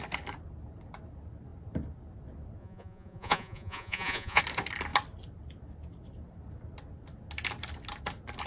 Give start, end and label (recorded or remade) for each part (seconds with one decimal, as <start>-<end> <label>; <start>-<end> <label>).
0.0-2.6 recorded; 2.6-4.4 remade; 4.4-8.5 recorded